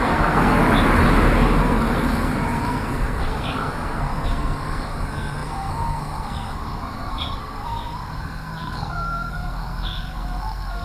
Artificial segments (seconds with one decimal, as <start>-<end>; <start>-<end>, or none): 0.0-0.6; 1.6-10.8

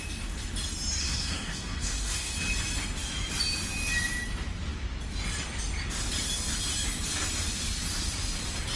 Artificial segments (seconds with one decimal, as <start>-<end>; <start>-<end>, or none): 1.0-2.3

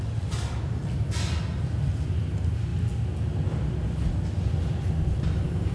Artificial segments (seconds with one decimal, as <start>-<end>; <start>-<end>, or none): none

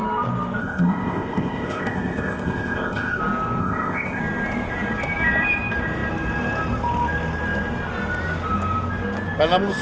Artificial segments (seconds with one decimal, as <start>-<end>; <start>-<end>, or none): 0.6-3.2; 3.6-4.2

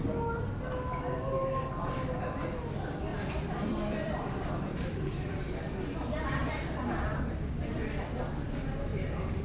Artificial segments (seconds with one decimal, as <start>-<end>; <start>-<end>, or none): 3.1-5.4; 6.4-8.2; 8.9-9.4